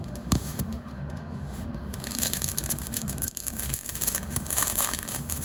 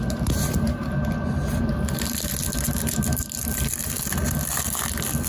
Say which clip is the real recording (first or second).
second